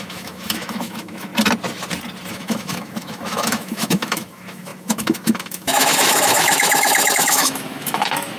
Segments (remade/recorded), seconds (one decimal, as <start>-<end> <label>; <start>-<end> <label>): 0.0-1.3 remade; 1.3-2.3 recorded; 2.3-8.4 remade